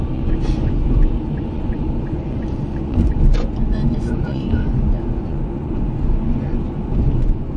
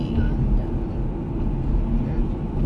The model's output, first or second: first